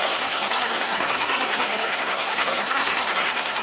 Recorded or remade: remade